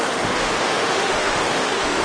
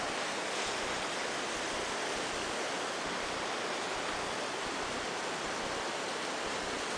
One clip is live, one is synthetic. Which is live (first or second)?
second